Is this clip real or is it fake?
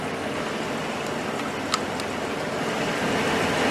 real